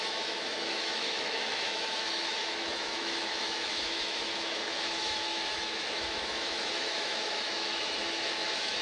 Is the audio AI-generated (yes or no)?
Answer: yes